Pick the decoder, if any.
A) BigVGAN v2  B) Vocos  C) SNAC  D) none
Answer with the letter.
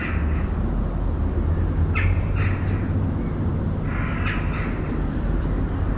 D